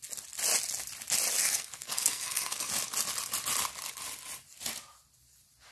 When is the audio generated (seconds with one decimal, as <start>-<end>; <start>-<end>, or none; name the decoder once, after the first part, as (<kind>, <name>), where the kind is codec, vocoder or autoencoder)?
1.4-2.7 (codec, SNAC)